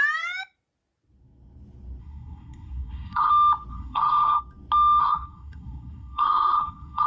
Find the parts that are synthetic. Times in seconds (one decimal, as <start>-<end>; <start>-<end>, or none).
2.0-3.3; 3.7-4.4; 5.0-7.1